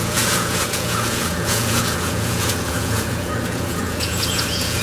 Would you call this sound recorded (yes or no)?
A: no